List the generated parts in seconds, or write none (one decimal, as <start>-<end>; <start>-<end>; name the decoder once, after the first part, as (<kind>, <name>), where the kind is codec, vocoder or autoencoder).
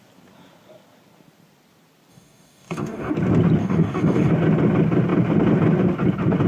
2.1-3.1 (codec, DAC); 3.6-4.3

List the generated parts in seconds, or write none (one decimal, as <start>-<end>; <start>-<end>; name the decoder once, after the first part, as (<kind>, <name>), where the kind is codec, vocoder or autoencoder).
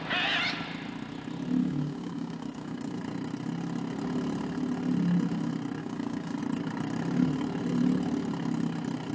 1.6-3.0 (codec, DAC); 5.8-6.4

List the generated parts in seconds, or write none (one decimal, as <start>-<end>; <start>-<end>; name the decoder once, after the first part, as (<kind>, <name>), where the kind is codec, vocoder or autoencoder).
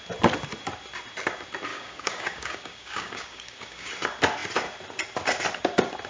1.7-3.9 (codec, DAC)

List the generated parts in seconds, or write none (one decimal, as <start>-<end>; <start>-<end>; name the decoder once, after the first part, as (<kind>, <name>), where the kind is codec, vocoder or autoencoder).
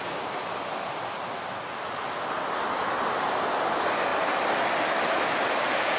none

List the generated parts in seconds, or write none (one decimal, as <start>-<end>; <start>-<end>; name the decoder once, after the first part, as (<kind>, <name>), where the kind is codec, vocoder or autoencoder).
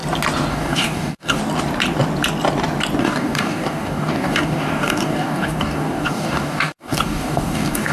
0.5-1.4 (codec, DAC); 3.0-7.9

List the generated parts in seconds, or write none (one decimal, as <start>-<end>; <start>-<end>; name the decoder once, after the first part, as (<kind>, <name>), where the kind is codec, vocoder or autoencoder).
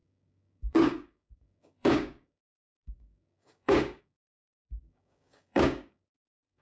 0.0-6.6 (codec, DAC)